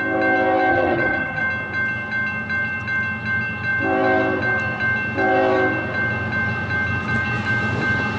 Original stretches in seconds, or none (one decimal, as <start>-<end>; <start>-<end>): 0.0-0.7; 1.4-8.2